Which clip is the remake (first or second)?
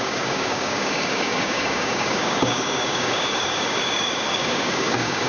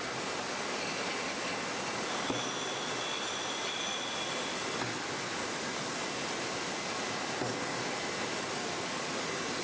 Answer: first